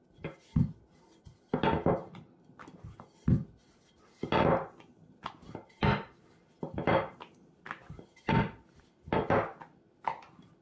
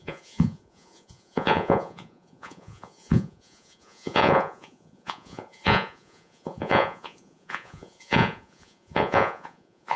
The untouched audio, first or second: first